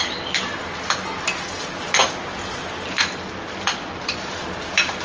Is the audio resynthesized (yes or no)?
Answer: no